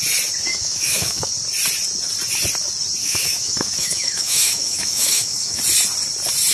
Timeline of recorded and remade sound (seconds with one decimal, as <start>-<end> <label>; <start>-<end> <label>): 0.0-0.5 recorded; 0.5-1.3 remade; 1.3-3.0 recorded; 3.0-5.6 remade; 5.6-6.5 recorded